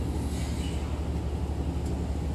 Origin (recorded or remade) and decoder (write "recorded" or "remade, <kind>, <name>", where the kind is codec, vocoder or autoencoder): recorded